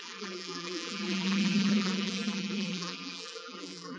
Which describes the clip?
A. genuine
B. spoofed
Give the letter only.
B